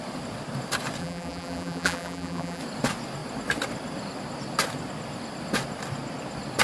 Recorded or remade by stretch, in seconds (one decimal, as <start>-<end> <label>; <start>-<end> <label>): 0.0-1.0 recorded; 1.0-2.6 remade; 2.6-6.6 recorded